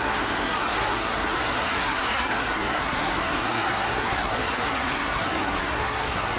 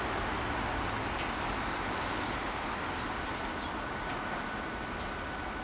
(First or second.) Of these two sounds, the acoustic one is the second